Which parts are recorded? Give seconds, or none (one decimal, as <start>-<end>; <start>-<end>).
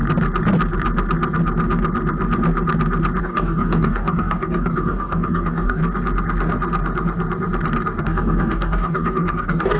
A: 0.0-3.2; 5.8-8.0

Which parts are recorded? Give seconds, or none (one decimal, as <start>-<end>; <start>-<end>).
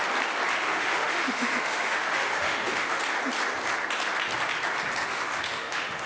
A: 0.0-0.5; 3.0-5.0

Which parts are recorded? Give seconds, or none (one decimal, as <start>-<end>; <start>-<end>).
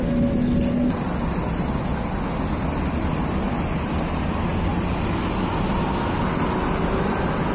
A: 0.0-7.5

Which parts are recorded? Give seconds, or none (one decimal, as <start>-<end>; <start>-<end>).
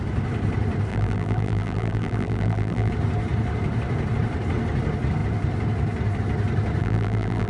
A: 0.0-0.9; 2.9-6.8